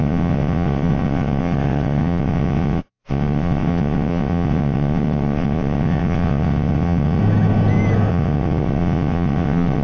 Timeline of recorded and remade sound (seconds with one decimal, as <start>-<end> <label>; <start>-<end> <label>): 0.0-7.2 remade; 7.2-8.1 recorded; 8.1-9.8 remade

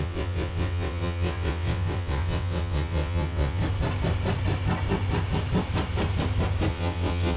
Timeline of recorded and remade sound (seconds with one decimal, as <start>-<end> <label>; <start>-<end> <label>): 0.0-3.6 remade; 3.6-6.7 recorded; 6.7-7.4 remade

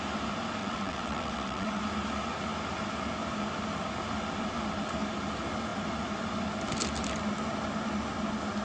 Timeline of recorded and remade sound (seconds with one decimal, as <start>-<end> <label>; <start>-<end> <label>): 0.0-0.6 recorded; 0.6-1.8 remade; 1.8-8.6 recorded

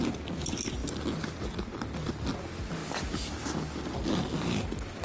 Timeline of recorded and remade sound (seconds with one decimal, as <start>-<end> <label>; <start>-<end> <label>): 0.0-5.0 recorded

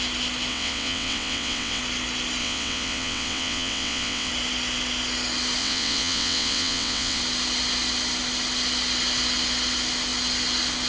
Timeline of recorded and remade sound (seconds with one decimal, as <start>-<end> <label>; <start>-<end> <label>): 0.0-0.5 recorded; 0.5-1.8 remade; 1.8-2.4 recorded; 2.4-4.3 remade; 4.3-5.6 recorded; 5.6-7.2 remade; 7.2-10.9 recorded